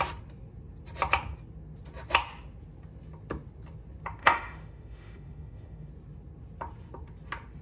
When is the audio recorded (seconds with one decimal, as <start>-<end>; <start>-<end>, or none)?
0.0-4.2; 5.9-7.6